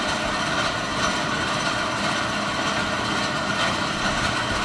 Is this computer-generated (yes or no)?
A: no